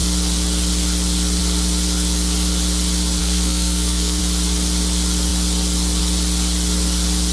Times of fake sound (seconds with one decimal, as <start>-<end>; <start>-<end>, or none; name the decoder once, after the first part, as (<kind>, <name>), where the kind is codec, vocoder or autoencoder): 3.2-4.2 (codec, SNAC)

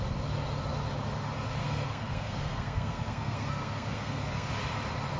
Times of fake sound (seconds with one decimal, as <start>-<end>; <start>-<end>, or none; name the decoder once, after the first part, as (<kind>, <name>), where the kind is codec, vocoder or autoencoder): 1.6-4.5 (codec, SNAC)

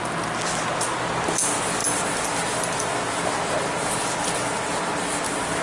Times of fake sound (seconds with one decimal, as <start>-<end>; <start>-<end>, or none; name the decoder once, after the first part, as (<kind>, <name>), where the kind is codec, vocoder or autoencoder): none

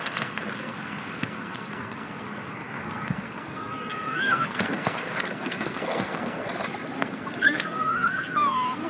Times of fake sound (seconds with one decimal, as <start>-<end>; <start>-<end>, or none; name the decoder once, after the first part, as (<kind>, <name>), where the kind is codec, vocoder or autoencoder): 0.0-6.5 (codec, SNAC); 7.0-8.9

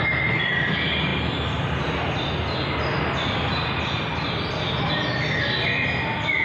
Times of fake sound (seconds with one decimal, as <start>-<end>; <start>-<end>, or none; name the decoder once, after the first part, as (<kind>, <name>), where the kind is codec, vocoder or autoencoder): none

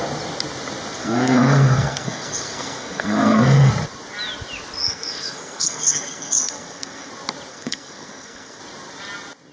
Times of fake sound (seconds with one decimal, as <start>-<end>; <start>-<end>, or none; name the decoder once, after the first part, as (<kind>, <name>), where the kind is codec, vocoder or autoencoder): 1.0-3.7 (codec, SNAC); 4.8-7.1; 7.5-8.6

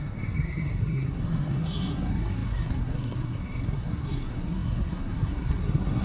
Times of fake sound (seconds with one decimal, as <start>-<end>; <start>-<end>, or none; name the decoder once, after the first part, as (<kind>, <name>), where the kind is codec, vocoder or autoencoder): 0.0-6.0 (codec, SNAC)